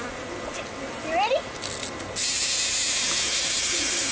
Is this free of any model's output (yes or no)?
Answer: yes